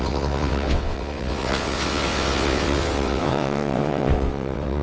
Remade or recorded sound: remade